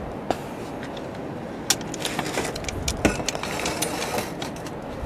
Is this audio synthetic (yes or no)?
no